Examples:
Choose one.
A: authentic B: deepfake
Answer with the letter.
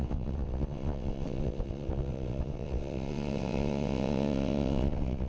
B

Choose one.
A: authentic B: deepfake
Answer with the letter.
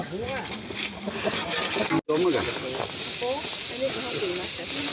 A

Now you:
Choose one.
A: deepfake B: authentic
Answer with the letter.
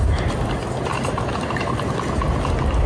B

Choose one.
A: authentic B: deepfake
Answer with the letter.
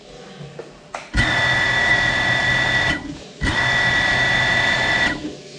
A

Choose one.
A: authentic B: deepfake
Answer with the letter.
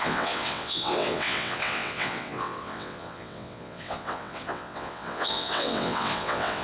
B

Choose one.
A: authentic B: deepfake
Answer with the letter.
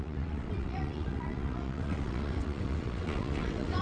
B